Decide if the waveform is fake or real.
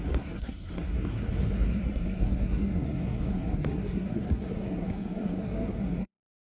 fake